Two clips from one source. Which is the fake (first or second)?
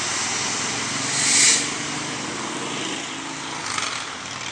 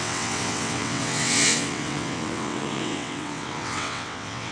second